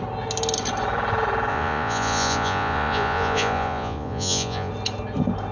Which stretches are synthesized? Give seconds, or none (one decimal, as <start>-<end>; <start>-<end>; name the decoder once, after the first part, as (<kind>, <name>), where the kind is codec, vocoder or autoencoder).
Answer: 1.5-4.7 (vocoder, Vocos)